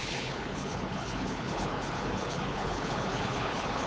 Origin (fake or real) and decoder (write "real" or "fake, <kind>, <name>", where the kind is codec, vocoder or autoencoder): fake, codec, HILCodec